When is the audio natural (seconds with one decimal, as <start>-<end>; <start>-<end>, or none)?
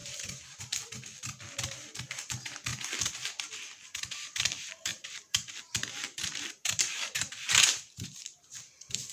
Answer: 0.6-4.9; 8.7-9.1